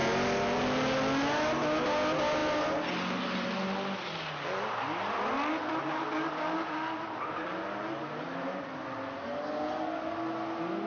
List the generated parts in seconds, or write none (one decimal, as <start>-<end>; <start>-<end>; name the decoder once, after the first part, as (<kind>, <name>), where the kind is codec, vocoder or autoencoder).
none